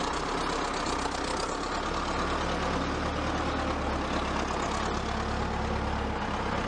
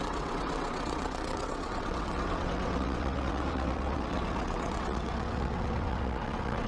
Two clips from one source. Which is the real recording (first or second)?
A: first